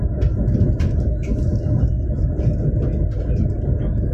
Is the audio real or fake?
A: real